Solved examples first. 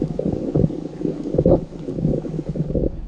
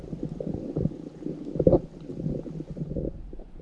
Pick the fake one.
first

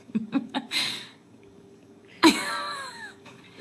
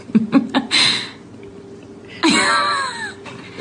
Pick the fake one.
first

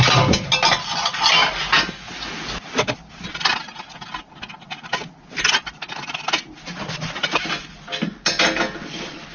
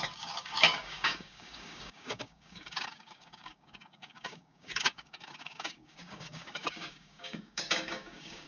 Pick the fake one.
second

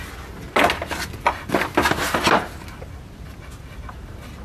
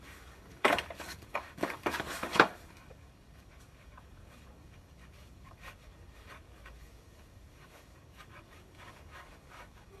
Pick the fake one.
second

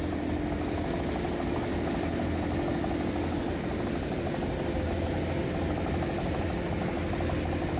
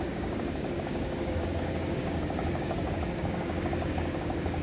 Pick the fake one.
second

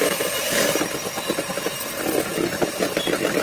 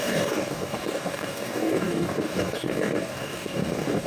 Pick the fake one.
second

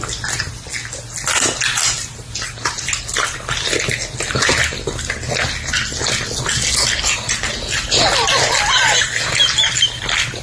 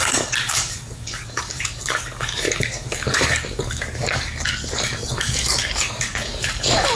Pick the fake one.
second